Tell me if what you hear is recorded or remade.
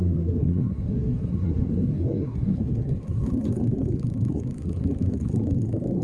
remade